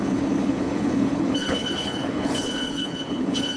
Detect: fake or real fake